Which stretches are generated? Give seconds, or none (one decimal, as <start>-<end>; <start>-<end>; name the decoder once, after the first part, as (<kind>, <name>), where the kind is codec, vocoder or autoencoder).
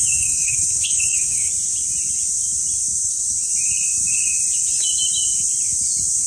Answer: 0.0-1.5 (codec, HILCodec); 3.0-3.5